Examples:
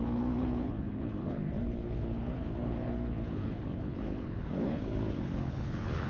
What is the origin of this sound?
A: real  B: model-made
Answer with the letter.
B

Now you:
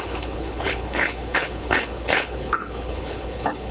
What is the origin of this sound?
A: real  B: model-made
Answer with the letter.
B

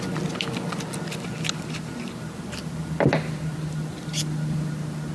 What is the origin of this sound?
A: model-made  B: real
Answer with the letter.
B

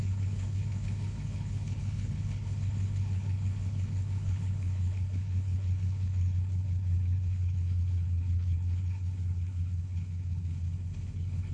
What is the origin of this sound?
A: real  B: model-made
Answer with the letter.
B